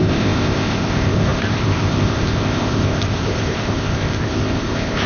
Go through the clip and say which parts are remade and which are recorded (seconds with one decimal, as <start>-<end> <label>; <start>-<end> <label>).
0.0-5.1 remade